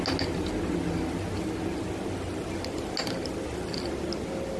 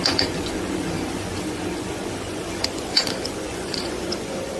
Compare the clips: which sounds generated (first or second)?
second